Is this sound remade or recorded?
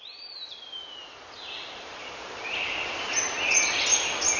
recorded